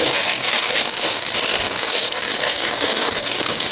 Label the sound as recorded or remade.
remade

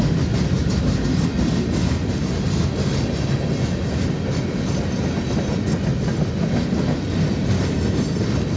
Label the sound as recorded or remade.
recorded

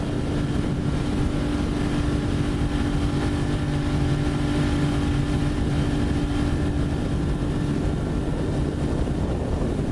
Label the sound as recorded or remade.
recorded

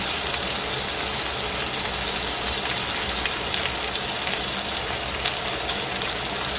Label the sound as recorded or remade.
recorded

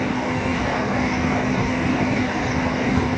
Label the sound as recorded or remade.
remade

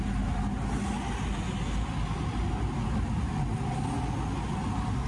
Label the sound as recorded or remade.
recorded